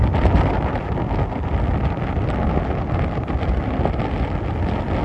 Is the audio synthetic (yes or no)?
no